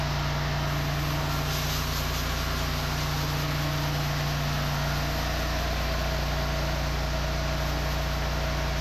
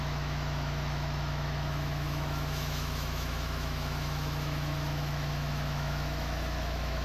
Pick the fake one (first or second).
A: second